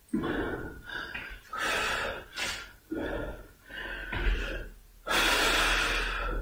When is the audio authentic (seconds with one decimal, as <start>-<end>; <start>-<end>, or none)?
0.0-6.4